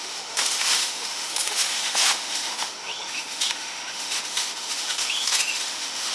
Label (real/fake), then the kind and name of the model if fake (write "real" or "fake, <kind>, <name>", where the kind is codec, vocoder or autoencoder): fake, autoencoder, DAC-VAE